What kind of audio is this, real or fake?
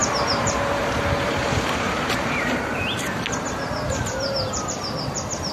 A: fake